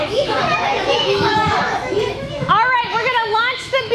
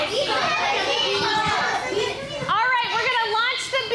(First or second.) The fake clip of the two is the first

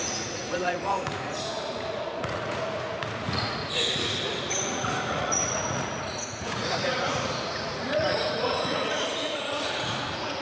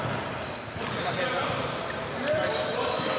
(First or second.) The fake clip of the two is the first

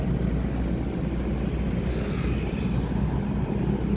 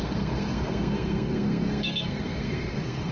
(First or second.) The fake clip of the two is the second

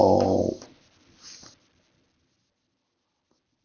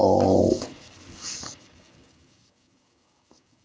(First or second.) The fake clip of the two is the second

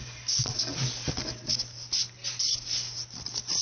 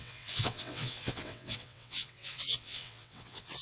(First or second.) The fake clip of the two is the second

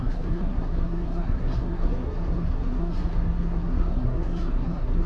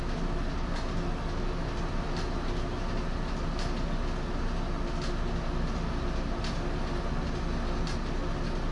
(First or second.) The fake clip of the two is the first